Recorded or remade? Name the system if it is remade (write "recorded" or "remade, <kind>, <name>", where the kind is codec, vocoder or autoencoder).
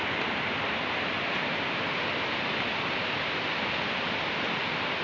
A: recorded